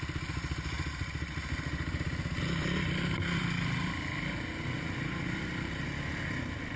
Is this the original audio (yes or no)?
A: yes